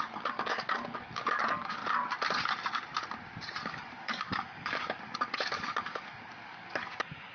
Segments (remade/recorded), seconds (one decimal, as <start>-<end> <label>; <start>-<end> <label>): 0.0-1.8 remade; 1.8-3.6 recorded; 3.6-7.3 remade